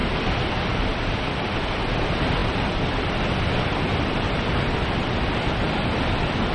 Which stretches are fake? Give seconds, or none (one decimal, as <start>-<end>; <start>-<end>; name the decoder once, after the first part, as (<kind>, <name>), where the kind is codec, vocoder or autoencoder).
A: 0.0-0.5 (vocoder, BigVGAN v2); 2.4-6.5